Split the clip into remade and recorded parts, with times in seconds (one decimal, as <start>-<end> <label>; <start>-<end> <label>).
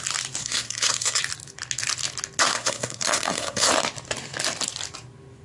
0.0-0.4 recorded; 0.4-1.2 remade; 1.2-2.5 recorded; 2.5-3.7 remade; 3.7-5.4 recorded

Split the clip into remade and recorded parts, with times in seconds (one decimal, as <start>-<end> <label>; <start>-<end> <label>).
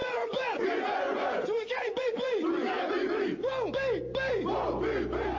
0.0-3.2 remade; 3.2-5.4 recorded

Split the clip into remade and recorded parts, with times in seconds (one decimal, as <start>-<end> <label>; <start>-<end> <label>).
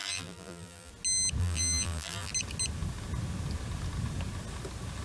0.0-0.9 remade; 0.9-1.4 recorded; 1.4-2.3 remade; 2.3-5.0 recorded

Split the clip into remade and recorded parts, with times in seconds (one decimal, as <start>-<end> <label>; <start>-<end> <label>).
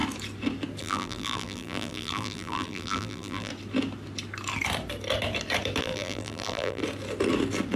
0.0-0.8 recorded; 0.8-3.5 remade; 3.5-5.8 recorded; 5.8-6.8 remade; 6.8-7.8 recorded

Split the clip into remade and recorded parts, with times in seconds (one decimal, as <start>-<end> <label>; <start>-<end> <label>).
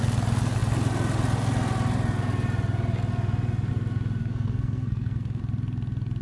0.0-4.2 recorded; 4.2-5.4 remade; 5.4-6.2 recorded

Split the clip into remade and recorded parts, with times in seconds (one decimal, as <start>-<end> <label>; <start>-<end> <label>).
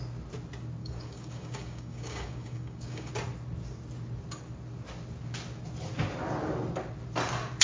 0.0-0.8 recorded; 0.8-3.1 remade; 3.1-7.6 recorded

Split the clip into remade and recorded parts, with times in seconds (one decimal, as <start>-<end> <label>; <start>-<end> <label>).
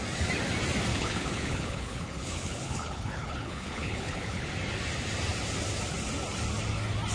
0.0-0.9 recorded; 0.9-4.5 remade; 4.5-7.1 recorded